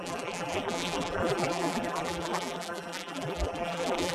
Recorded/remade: remade